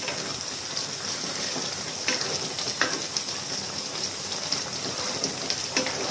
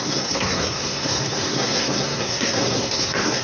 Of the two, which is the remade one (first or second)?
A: second